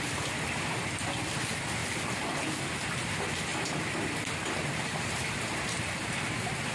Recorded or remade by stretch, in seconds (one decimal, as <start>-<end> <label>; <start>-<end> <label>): 0.0-6.7 recorded